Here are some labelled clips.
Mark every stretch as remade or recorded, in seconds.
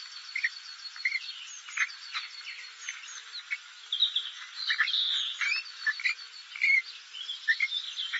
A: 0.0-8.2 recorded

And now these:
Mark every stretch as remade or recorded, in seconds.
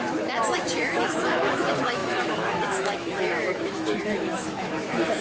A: 0.0-5.2 remade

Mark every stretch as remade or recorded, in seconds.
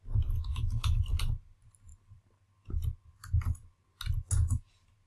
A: 0.0-0.5 recorded; 0.5-1.0 remade; 1.0-5.1 recorded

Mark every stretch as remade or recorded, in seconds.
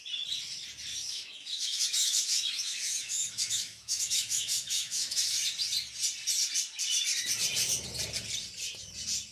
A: 0.0-0.9 recorded; 0.9-5.4 remade; 5.4-9.3 recorded